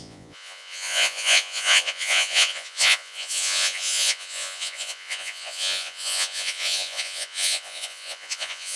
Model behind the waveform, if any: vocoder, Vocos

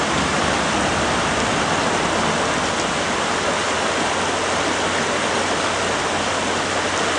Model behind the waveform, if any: none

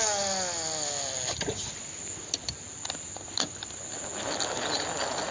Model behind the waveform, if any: none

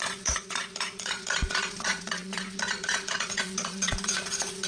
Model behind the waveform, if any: vocoder, Vocos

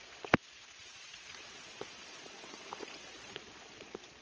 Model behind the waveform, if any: vocoder, Vocos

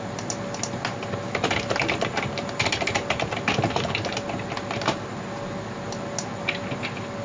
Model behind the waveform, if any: none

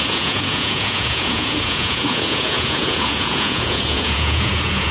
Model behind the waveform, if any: vocoder, Vocos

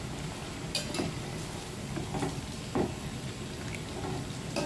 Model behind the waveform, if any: none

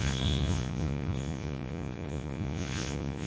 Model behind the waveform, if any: vocoder, Vocos